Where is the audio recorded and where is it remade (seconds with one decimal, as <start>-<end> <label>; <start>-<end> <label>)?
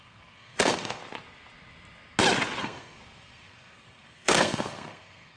0.0-1.0 remade; 1.0-2.6 recorded; 2.6-5.4 remade